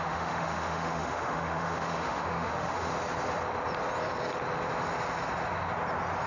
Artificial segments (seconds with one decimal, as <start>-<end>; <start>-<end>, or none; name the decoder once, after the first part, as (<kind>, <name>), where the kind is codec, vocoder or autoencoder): 0.0-2.9 (autoencoder, DAC-VAE)